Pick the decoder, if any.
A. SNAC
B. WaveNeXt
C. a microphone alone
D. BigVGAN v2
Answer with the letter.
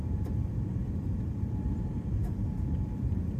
D